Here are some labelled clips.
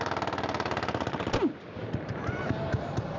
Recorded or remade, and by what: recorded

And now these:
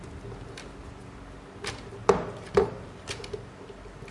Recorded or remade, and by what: remade, vocoder, BigVGAN v2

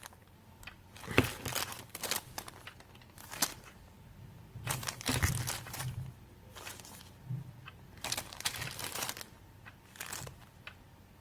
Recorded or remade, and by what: remade, vocoder, BigVGAN v2